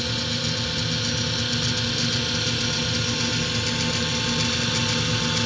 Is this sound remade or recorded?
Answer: recorded